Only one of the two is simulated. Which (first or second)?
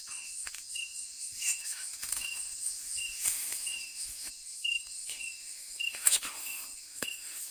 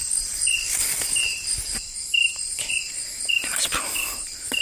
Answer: first